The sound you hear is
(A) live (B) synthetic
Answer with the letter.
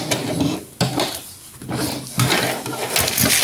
A